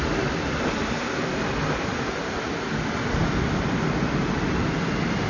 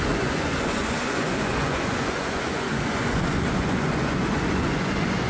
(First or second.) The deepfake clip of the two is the second